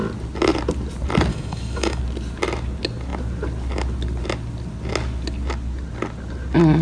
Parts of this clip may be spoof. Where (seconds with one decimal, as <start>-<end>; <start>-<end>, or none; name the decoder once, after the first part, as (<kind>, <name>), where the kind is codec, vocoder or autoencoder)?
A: 1.3-2.0 (autoencoder, DAC-VAE)